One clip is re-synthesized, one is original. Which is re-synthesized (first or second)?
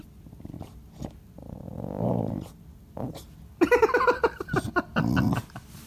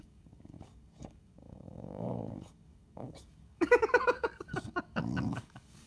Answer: second